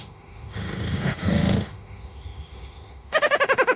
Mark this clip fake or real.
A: fake